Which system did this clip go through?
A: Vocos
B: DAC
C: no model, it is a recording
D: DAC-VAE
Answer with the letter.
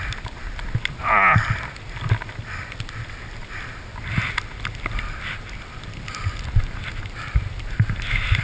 C